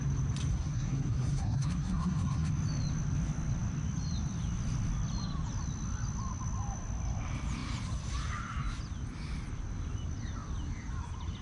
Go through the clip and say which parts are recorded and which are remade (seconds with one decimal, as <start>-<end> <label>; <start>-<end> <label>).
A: 0.0-0.5 recorded; 0.5-2.5 remade; 2.5-11.4 recorded